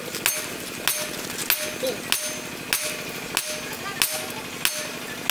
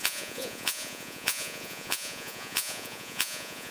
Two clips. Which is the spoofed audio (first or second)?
second